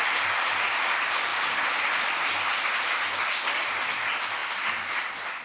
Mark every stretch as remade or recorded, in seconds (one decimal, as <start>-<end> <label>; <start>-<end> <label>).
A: 0.0-5.4 recorded